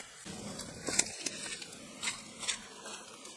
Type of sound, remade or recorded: recorded